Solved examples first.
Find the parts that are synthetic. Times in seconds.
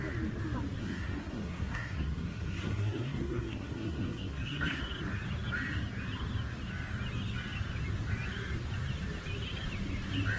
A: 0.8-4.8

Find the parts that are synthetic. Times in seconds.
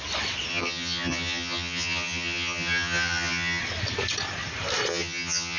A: 0.5-3.6; 4.9-5.6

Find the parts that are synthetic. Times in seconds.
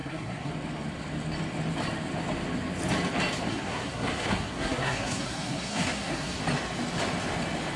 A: 0.0-0.5; 3.5-6.4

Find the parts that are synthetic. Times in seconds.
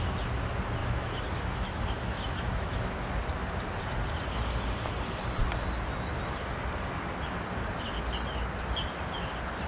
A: 0.8-2.9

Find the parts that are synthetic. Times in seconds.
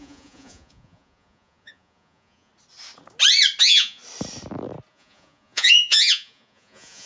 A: 0.0-2.5; 3.6-4.0; 4.9-7.1